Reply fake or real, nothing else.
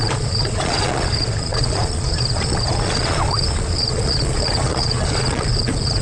fake